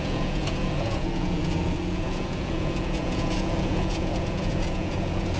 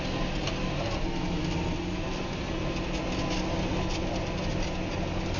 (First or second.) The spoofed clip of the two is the first